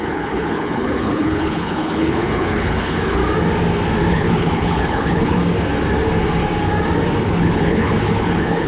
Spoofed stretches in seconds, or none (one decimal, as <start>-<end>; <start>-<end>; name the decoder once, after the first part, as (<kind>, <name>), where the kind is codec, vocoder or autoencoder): 0.0-3.2 (codec, HILCodec); 4.1-5.4; 7.4-8.7